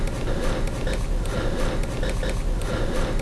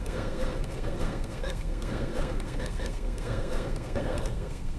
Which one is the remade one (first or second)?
second